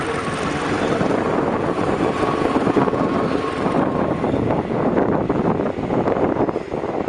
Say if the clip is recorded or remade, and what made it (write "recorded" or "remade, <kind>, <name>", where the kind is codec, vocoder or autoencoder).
remade, vocoder, BigVGAN v2